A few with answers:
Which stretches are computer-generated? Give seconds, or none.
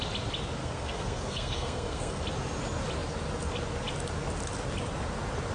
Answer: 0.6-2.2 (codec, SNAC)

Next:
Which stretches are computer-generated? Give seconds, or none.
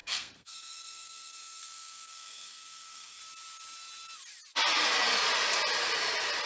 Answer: 0.0-3.2 (codec, SNAC)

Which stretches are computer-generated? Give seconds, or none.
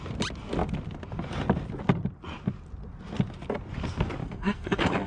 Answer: 4.2-5.1 (codec, SNAC)